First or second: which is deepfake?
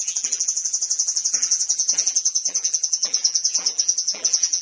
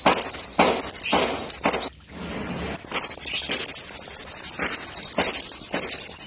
first